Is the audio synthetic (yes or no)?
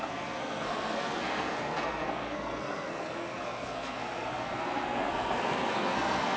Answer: yes